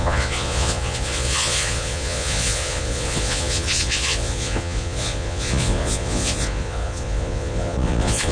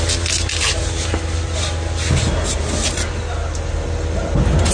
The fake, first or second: first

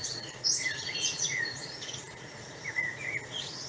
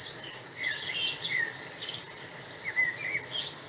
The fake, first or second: first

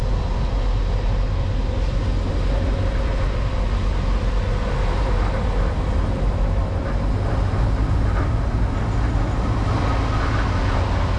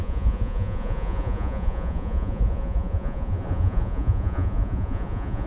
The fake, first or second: second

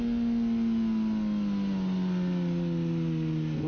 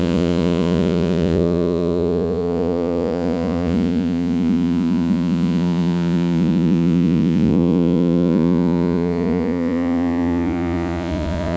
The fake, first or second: second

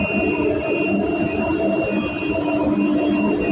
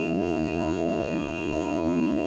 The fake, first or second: second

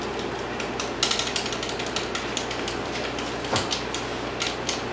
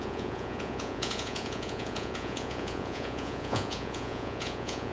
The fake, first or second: second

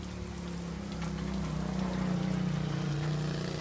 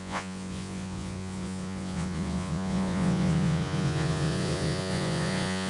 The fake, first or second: second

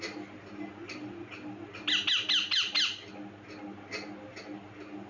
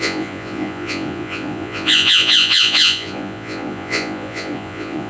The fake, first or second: second